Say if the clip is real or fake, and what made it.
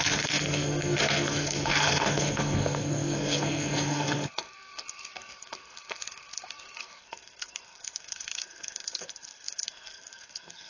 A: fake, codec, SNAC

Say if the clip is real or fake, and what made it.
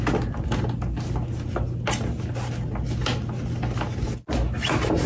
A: real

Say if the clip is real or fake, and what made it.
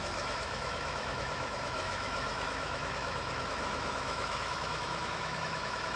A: fake, autoencoder, DAC-VAE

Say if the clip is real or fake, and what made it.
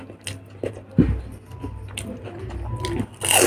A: real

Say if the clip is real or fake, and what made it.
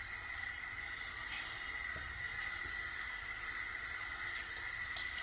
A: real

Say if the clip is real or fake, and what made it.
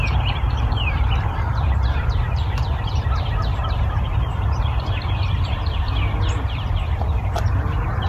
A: fake, vocoder, BigVGAN v2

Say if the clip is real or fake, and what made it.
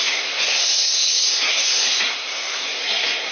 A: fake, codec, SNAC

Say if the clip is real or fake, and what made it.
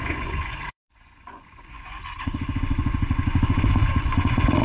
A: fake, vocoder, Vocos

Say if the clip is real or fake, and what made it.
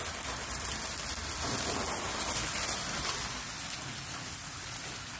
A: real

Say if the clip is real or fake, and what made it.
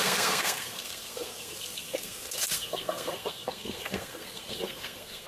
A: fake, codec, SNAC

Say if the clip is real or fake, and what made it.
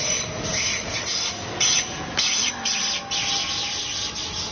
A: real